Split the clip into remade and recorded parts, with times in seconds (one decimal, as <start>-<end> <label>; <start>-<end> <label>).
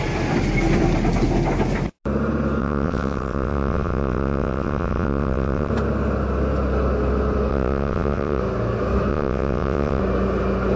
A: 0.0-2.6 recorded; 2.6-5.7 remade; 5.7-7.5 recorded; 7.5-8.4 remade; 8.4-9.1 recorded; 9.1-10.0 remade; 10.0-10.8 recorded